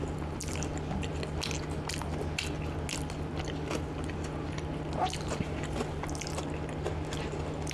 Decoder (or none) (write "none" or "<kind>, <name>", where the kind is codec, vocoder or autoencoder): none